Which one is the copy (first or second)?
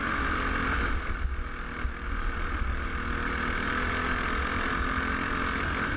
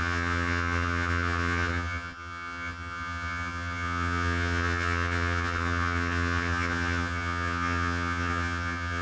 second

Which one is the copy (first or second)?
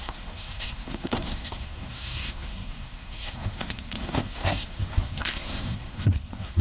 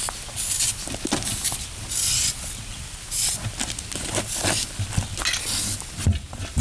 first